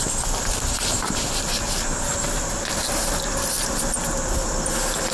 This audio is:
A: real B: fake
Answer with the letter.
A